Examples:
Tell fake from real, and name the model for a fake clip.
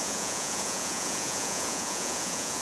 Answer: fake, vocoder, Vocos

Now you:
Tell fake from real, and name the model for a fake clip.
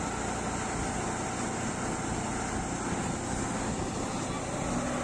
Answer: real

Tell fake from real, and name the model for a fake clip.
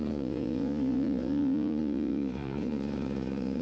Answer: fake, vocoder, Vocos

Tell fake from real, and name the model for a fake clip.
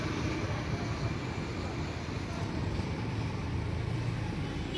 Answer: real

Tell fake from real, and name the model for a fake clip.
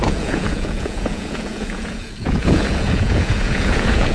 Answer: fake, vocoder, Vocos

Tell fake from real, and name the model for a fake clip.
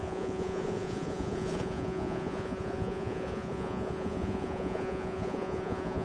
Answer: fake, vocoder, Vocos